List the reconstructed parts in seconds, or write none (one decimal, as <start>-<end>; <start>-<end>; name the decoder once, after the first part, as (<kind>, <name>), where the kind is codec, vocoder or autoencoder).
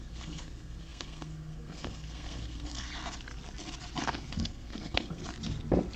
0.0-2.9 (codec, SNAC); 4.0-5.2